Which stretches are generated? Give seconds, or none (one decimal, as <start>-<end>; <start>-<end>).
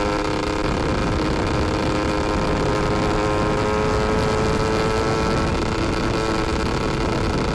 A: none